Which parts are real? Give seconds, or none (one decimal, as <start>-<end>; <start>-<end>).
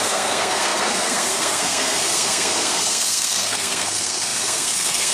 none